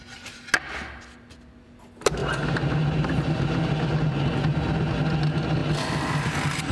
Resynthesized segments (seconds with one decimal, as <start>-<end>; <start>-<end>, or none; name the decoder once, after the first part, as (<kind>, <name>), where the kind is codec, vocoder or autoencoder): 2.2-3.5 (vocoder, BigVGAN v2); 5.6-6.7